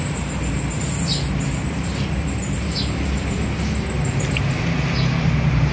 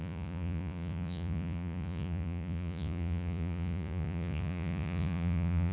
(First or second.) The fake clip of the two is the second